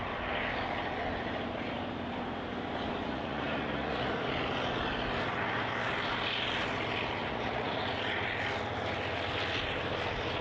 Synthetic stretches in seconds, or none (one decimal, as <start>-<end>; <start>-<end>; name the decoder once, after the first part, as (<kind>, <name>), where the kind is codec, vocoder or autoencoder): 3.1-4.1 (vocoder, Vocos); 7.2-7.8